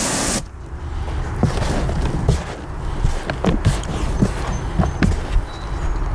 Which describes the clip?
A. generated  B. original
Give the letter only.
B